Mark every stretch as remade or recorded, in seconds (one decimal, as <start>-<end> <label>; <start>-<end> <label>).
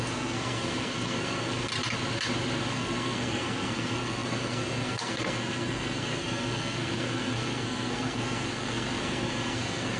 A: 0.0-1.7 remade; 1.7-2.7 recorded; 2.7-10.0 remade